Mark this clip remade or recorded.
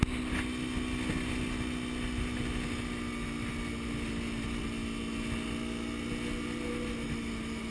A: recorded